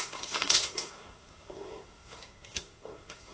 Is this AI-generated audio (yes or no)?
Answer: yes